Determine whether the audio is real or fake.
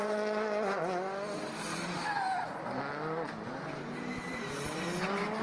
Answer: real